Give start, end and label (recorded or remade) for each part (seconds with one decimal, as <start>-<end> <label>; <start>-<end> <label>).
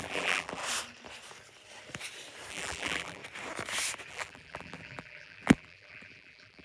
0.0-0.6 remade; 0.6-2.5 recorded; 2.5-3.2 remade; 3.2-4.1 recorded; 4.1-6.6 remade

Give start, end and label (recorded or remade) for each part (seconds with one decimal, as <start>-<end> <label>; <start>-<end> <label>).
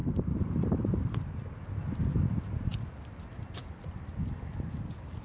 0.0-1.2 remade; 1.2-5.2 recorded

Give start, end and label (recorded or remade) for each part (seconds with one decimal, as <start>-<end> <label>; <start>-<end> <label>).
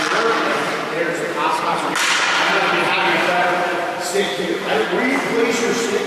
0.0-6.1 recorded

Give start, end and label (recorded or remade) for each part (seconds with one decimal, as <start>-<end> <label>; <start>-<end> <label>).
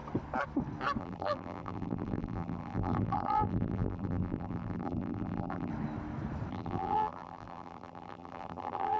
0.0-1.0 recorded; 1.0-5.7 remade; 5.7-6.5 recorded; 6.5-9.0 remade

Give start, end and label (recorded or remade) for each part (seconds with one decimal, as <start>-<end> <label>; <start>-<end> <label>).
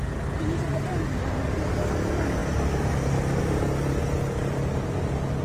0.0-5.4 recorded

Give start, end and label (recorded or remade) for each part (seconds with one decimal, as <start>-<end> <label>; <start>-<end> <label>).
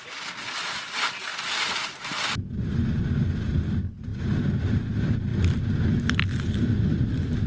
0.0-1.3 recorded; 1.3-2.3 remade; 2.3-7.5 recorded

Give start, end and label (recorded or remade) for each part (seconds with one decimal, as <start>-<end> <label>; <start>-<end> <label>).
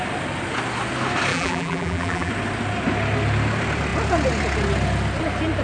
0.0-1.3 recorded; 1.3-2.3 remade; 2.3-5.6 recorded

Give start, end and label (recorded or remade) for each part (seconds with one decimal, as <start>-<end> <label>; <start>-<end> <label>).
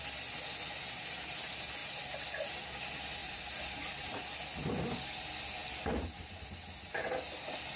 0.0-3.2 recorded; 3.2-4.2 remade; 4.2-7.8 recorded